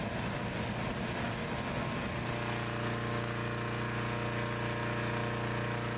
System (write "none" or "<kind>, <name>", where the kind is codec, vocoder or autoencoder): none